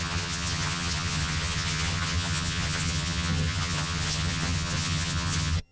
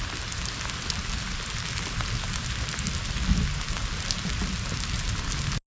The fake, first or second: first